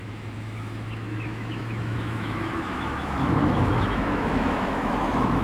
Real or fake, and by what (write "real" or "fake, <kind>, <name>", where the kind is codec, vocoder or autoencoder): fake, autoencoder, DAC-VAE